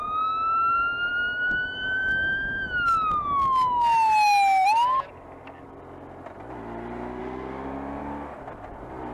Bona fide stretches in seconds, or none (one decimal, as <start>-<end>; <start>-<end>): 0.0-9.1